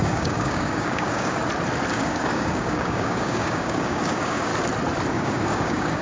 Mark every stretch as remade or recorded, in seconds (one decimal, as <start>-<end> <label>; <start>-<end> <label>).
0.0-1.4 remade; 1.4-1.9 recorded; 1.9-4.5 remade; 4.5-5.1 recorded; 5.1-6.0 remade